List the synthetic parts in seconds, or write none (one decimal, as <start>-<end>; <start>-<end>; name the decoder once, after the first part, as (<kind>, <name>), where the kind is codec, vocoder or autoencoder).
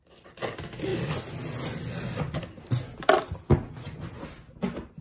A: none